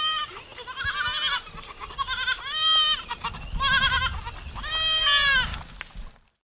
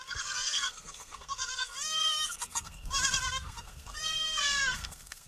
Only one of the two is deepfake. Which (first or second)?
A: second